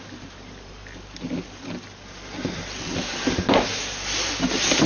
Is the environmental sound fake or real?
real